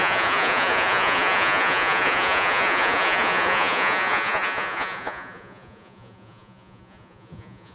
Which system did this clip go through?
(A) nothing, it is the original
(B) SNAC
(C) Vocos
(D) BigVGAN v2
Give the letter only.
C